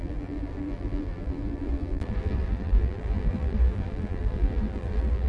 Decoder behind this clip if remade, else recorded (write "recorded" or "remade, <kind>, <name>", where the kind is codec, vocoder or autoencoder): remade, vocoder, BigVGAN v2